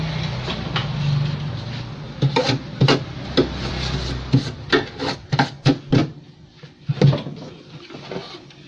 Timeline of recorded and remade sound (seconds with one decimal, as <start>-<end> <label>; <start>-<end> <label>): 0.0-8.7 recorded